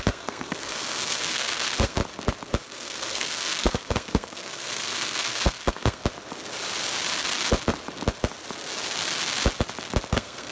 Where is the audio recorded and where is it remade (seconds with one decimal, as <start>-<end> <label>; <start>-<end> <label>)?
0.0-2.0 remade; 2.0-2.6 recorded; 2.6-6.0 remade; 6.0-10.1 recorded; 10.1-10.5 remade